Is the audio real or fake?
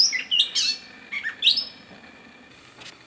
real